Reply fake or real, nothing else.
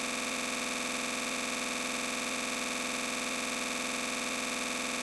real